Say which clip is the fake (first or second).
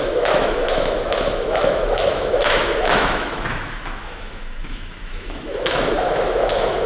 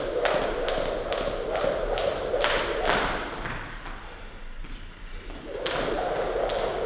first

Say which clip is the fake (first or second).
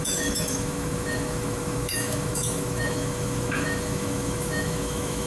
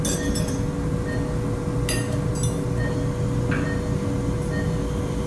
first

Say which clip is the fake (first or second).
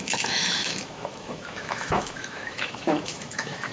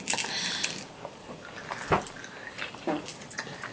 first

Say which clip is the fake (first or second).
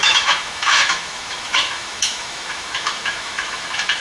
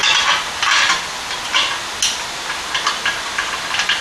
first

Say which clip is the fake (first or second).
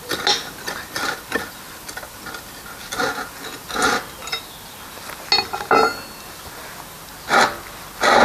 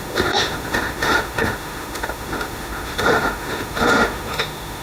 second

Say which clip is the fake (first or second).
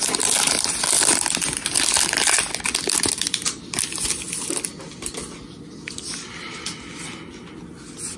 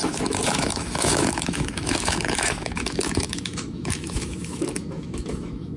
second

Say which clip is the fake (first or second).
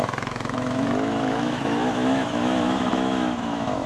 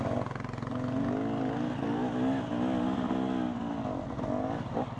first